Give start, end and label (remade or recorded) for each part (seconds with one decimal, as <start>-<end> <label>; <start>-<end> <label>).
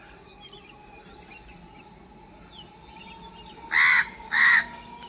0.0-3.9 recorded; 3.9-5.1 remade